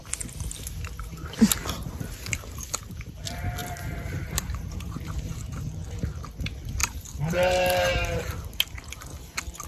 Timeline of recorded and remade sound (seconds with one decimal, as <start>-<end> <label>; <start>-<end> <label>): 0.0-1.6 recorded; 1.6-3.1 remade; 3.1-3.6 recorded; 3.6-5.7 remade; 5.7-6.8 recorded; 6.8-8.3 remade; 8.3-9.7 recorded